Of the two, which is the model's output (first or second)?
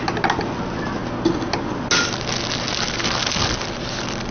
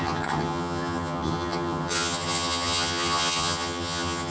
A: second